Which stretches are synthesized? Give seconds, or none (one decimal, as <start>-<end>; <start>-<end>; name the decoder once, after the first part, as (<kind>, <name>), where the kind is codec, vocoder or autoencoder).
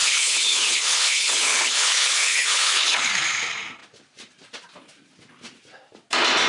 0.0-3.1 (codec, HILCodec)